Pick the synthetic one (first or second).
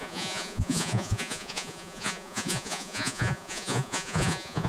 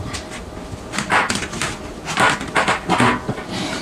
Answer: first